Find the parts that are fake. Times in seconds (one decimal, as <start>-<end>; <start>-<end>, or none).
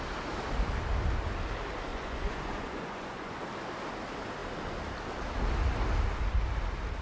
1.9-3.4